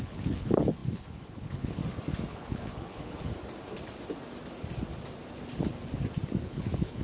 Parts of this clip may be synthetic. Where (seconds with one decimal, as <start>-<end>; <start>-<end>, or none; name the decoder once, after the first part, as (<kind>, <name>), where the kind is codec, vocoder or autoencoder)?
0.0-1.8 (codec, HILCodec); 2.3-3.3; 6.4-7.0